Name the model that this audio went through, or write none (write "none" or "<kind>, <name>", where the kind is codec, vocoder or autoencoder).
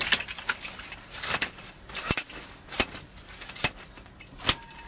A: none